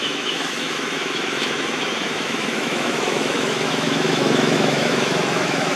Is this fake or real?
fake